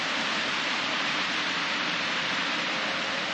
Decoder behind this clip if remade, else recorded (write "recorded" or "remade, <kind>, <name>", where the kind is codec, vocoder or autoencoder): remade, vocoder, BigVGAN v2